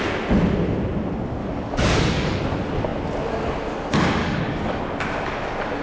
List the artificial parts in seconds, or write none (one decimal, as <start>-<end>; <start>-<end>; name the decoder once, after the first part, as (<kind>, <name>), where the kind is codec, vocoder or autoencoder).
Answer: 1.4-2.4 (codec, DAC); 4.2-4.8